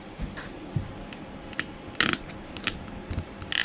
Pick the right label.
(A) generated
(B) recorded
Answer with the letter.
B